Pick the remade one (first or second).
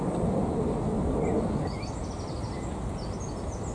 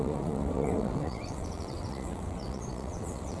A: second